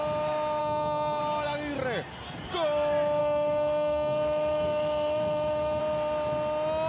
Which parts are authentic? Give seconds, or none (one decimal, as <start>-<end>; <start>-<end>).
0.0-0.6; 1.2-3.2; 5.8-6.9